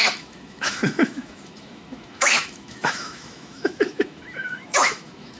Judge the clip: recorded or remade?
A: remade